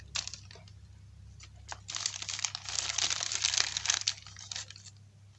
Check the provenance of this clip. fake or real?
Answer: real